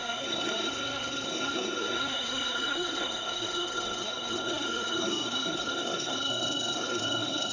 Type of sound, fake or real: fake